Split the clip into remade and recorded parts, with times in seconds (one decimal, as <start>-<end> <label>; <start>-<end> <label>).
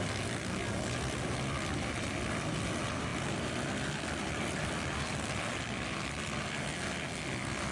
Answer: 0.0-7.7 recorded